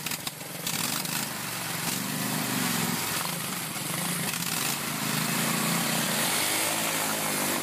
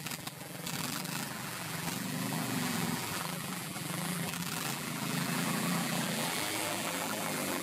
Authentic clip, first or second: first